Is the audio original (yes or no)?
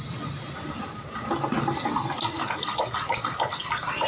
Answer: yes